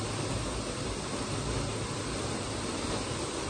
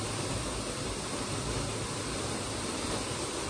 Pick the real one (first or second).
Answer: first